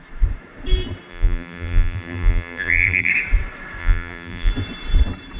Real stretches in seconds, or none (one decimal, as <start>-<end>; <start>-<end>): 0.0-1.1; 3.1-3.8; 4.5-5.4